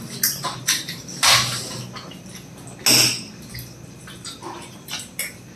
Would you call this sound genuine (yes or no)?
yes